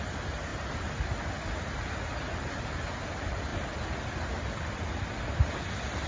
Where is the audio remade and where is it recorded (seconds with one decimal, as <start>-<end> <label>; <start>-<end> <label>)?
0.0-6.1 recorded